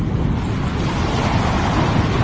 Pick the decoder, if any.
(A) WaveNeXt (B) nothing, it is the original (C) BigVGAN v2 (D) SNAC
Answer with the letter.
B